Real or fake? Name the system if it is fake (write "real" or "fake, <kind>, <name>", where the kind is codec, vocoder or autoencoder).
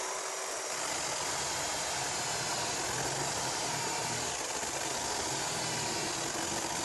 real